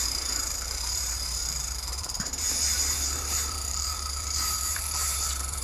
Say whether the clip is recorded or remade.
remade